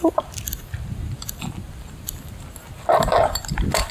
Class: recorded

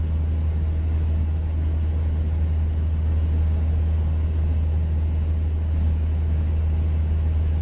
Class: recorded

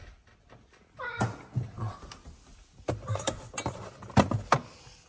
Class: recorded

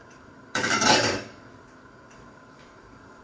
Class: remade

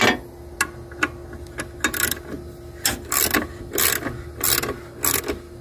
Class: recorded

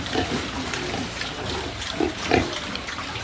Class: recorded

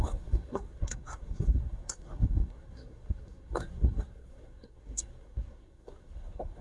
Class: remade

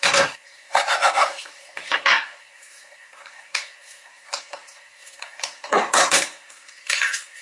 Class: remade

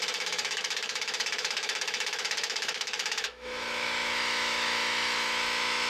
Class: remade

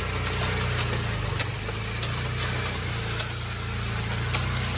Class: recorded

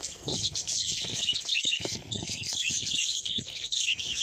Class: remade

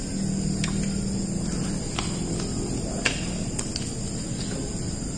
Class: recorded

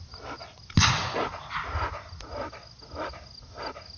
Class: recorded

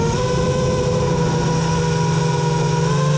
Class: recorded